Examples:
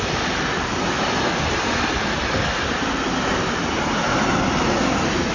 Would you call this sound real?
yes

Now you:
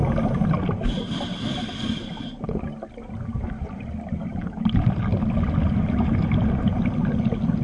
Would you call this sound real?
yes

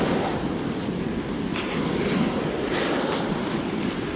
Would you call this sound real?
yes